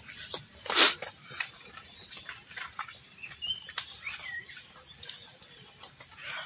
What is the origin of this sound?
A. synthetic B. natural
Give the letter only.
A